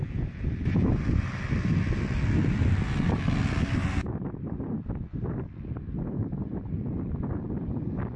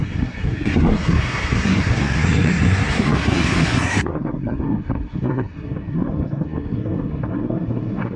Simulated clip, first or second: second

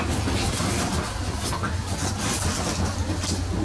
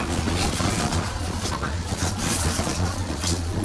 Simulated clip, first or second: second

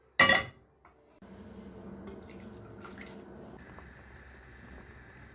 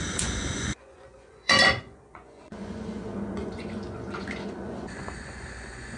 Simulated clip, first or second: second